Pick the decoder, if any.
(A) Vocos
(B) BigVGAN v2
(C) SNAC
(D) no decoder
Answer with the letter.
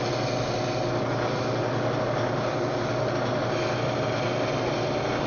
D